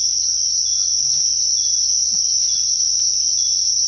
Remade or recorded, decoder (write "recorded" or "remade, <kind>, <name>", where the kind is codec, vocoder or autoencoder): recorded